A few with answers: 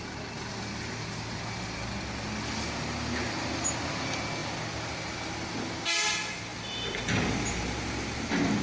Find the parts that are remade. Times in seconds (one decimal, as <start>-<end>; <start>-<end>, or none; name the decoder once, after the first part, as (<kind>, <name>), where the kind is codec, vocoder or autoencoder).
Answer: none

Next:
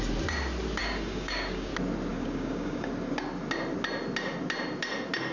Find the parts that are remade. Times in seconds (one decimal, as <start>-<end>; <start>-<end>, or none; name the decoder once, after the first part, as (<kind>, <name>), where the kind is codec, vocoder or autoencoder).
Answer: 0.8-1.7 (codec, DAC); 2.1-2.9

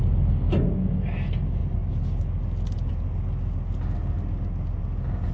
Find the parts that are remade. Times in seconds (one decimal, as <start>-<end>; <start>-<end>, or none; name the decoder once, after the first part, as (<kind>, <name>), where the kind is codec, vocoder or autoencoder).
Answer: none